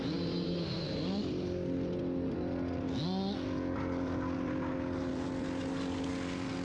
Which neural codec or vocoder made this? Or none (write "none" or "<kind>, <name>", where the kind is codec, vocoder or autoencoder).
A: none